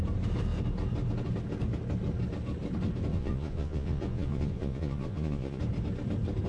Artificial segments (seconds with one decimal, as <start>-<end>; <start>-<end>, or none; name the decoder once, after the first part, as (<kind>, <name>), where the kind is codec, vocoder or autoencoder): 3.1-5.6 (vocoder, Vocos)